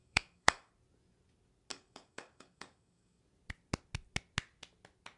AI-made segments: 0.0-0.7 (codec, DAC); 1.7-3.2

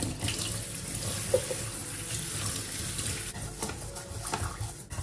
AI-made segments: none